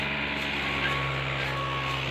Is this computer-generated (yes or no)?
no